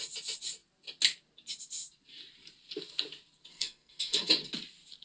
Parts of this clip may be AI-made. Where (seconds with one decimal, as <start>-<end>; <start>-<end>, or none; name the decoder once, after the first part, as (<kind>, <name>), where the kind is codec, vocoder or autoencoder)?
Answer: 3.5-4.3 (codec, SNAC)